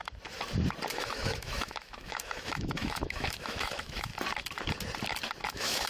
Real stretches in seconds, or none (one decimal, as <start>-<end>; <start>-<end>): 0.0-0.9; 4.1-5.5